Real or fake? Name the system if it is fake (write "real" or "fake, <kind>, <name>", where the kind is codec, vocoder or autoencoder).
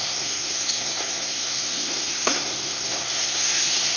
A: fake, codec, SNAC